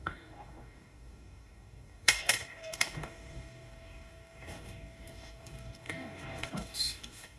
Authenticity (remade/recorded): remade